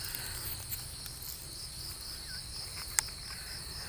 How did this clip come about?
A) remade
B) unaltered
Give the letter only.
B